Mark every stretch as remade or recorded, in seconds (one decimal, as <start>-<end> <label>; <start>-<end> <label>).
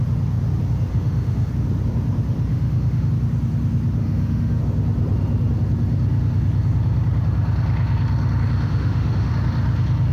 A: 0.0-0.9 recorded; 0.9-1.5 remade; 1.5-2.5 recorded; 2.5-3.1 remade; 3.1-4.0 recorded; 4.0-4.6 remade; 4.6-8.7 recorded; 8.7-9.3 remade; 9.3-10.1 recorded